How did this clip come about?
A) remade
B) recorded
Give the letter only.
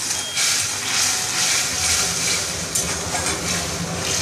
B